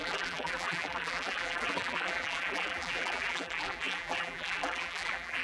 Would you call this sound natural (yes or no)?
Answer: no